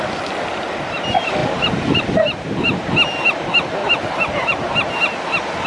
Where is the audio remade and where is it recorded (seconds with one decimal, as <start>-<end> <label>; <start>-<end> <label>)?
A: 0.0-1.4 recorded; 1.4-2.9 remade; 2.9-3.8 recorded; 3.8-4.9 remade; 4.9-5.7 recorded